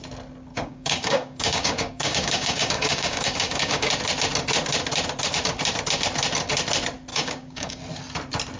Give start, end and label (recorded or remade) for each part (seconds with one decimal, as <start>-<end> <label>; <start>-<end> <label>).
0.0-0.5 recorded; 0.5-3.9 remade; 3.9-7.1 recorded; 7.1-7.8 remade; 7.8-8.6 recorded

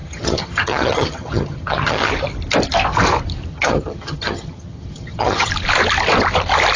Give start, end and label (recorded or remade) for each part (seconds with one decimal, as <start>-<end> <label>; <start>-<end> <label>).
0.0-2.1 remade; 2.1-3.5 recorded; 3.5-5.5 remade; 5.5-6.8 recorded

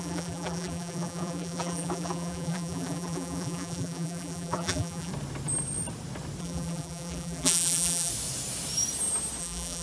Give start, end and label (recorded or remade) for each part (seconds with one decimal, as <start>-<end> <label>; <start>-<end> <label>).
0.0-5.1 remade; 5.1-6.4 recorded; 6.4-8.1 remade; 8.1-9.4 recorded; 9.4-9.8 remade

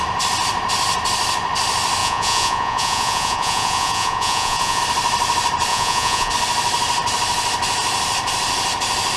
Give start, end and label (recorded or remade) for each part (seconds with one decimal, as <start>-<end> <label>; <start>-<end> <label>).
0.0-2.0 recorded; 2.0-4.8 remade; 4.8-5.7 recorded; 5.7-6.3 remade; 6.3-9.2 recorded